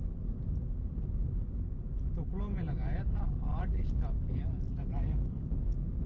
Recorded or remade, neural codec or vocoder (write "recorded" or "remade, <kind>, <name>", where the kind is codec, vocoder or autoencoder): recorded